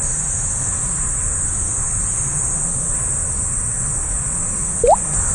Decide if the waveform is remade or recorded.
recorded